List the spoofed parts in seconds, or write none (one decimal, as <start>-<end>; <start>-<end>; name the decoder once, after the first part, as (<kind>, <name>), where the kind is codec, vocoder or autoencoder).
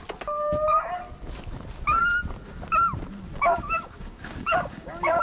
3.3-5.2 (codec, DAC)